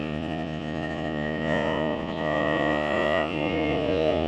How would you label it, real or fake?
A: fake